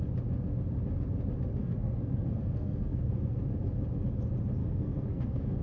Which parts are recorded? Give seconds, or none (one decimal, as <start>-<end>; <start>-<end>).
0.0-1.6; 3.4-4.6